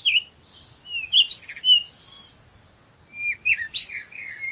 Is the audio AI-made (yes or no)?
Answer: no